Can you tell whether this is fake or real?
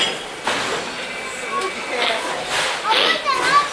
real